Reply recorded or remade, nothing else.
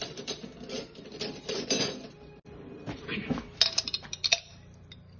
recorded